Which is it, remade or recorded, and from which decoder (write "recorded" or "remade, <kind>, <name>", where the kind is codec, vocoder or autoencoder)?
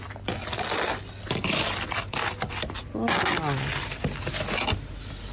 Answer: recorded